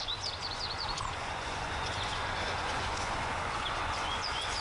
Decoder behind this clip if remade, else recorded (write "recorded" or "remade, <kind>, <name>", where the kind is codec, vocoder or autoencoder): remade, vocoder, Vocos